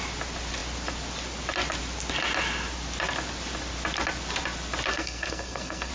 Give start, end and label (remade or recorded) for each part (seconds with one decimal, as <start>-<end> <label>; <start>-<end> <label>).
0.0-4.9 recorded; 4.9-5.9 remade